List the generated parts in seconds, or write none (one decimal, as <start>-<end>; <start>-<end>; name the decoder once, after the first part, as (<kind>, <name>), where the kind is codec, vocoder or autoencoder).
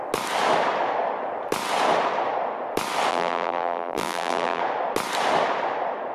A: 3.1-4.6 (vocoder, BigVGAN v2)